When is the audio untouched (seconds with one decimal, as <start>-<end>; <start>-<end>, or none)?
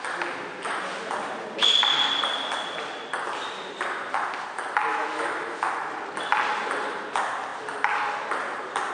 0.0-4.9; 5.7-8.9